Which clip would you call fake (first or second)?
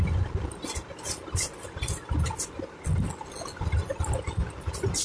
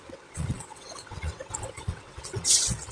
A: second